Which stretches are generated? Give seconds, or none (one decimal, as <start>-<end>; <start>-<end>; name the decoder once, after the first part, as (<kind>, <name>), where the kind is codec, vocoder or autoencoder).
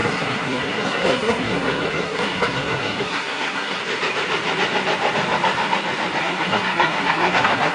0.0-3.8 (codec, SNAC); 6.2-7.7